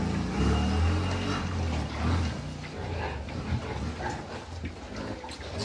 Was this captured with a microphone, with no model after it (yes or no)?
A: yes